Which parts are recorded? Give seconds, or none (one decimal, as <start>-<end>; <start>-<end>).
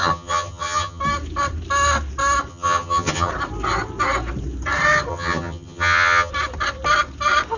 1.0-2.5; 3.3-5.1; 6.3-7.6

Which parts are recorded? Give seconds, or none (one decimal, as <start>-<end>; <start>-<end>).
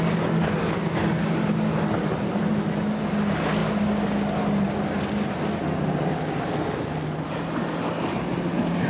0.0-1.7; 2.5-8.1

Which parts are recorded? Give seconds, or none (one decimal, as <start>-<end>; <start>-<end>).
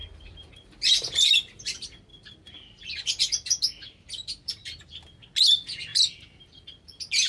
0.9-2.1; 4.8-5.9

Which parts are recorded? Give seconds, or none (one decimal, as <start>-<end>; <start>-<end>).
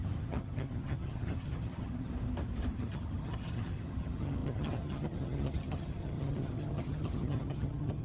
2.1-2.7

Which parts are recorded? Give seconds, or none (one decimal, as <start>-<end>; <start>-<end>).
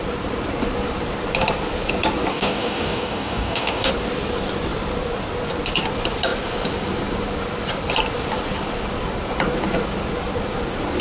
0.0-2.3; 3.9-11.0